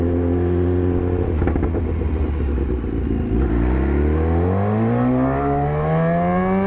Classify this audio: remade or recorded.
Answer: recorded